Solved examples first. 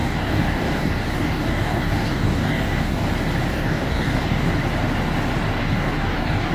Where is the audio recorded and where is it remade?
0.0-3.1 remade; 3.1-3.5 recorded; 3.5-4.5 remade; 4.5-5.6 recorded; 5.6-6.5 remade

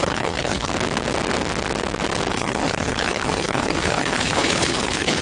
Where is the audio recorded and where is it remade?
0.0-0.7 remade; 0.7-2.3 recorded; 2.3-5.2 remade

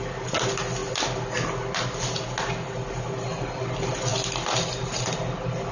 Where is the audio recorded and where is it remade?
0.0-5.7 recorded

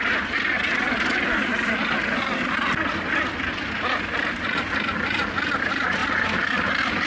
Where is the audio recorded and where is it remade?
0.0-7.1 recorded

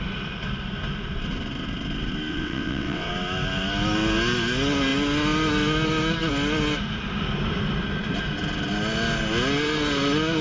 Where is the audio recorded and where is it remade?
0.0-2.3 recorded; 2.3-3.1 remade; 3.1-10.4 recorded

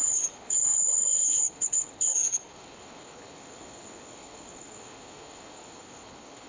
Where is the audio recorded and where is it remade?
0.0-6.5 remade